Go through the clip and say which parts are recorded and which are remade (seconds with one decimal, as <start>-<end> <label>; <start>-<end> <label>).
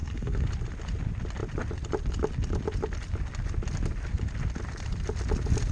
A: 0.0-0.5 remade; 0.5-5.7 recorded